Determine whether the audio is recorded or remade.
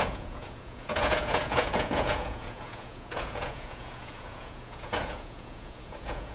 remade